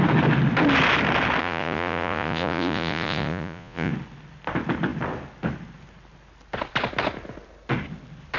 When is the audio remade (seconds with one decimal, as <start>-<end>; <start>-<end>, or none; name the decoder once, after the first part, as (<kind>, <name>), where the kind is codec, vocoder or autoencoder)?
1.4-3.9 (vocoder, Vocos)